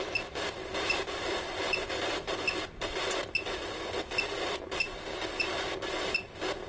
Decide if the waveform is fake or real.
real